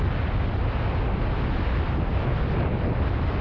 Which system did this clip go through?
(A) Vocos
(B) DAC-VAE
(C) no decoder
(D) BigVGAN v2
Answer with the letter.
C